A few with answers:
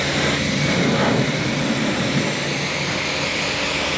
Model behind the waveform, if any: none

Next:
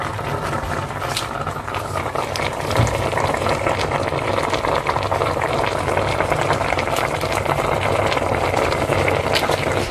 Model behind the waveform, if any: none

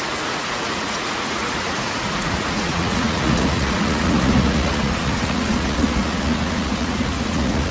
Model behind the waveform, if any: vocoder, Vocos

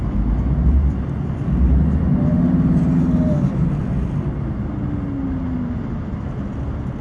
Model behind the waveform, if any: none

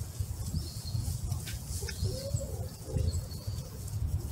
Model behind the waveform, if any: vocoder, Vocos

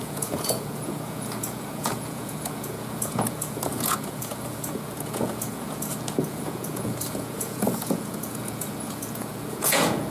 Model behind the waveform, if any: vocoder, Vocos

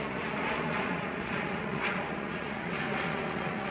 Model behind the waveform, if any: vocoder, Vocos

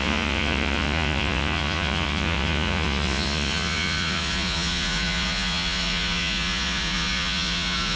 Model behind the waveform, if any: vocoder, Vocos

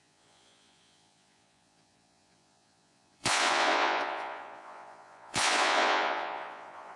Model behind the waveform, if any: vocoder, Vocos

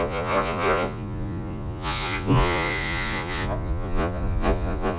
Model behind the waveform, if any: vocoder, Vocos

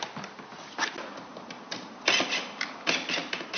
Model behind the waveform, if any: none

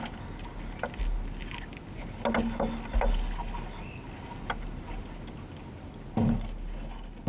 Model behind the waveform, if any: none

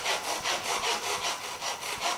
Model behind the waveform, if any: none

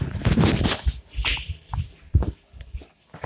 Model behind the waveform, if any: none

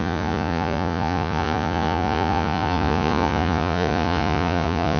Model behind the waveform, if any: vocoder, Vocos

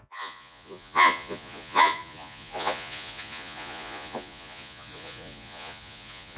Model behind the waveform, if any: vocoder, Vocos